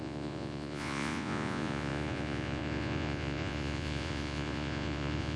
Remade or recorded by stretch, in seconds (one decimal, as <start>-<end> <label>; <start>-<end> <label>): 0.0-5.4 remade